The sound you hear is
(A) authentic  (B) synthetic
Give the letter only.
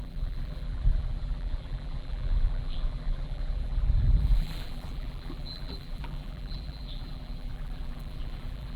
B